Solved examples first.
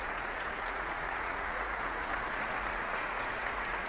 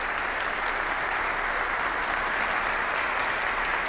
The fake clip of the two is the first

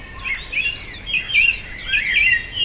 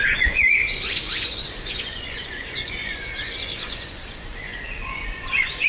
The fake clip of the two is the second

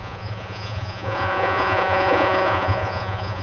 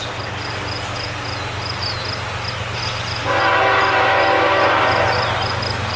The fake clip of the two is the first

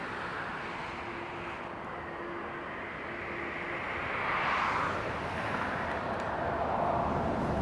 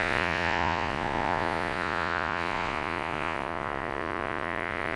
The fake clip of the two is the second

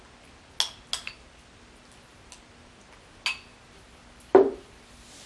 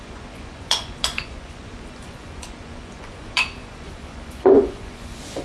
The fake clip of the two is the second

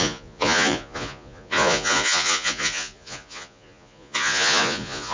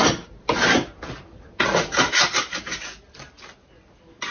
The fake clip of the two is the first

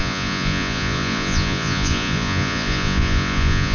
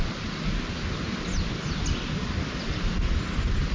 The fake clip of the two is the first